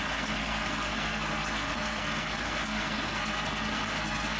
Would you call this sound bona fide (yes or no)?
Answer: no